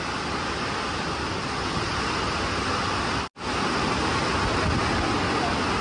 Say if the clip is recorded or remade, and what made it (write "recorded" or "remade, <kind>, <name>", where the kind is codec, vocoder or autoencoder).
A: recorded